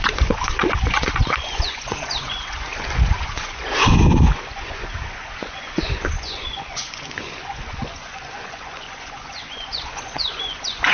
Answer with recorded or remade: remade